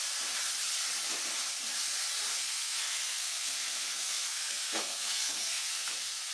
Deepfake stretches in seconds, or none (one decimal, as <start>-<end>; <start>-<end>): 2.3-6.3

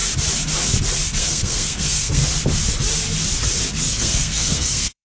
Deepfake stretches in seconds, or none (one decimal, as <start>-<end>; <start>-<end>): 1.2-2.2; 3.8-5.0

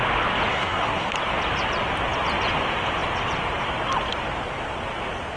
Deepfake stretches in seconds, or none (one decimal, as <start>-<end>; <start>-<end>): 0.5-1.1

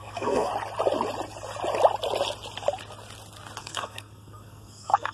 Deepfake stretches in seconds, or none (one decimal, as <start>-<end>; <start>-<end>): 0.0-0.5; 3.6-5.1

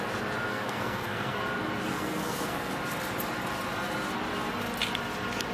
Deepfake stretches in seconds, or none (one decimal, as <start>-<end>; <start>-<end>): 0.5-1.4; 1.9-2.7

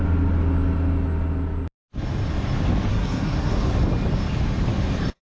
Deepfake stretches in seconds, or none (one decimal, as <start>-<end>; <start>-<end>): 2.9-3.5